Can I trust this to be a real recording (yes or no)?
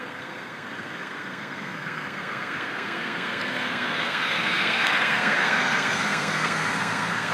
no